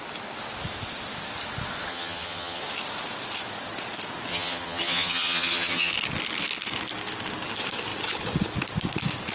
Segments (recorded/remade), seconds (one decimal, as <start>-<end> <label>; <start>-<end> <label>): 0.0-1.9 recorded; 1.9-2.6 remade; 2.6-4.3 recorded; 4.3-5.9 remade; 5.9-9.3 recorded